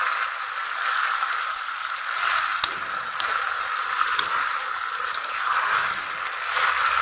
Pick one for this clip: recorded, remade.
recorded